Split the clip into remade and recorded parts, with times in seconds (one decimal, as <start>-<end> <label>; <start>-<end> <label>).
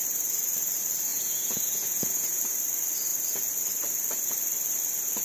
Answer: 0.0-1.1 recorded; 1.1-2.4 remade; 2.4-5.2 recorded